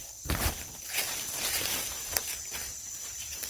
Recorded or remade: remade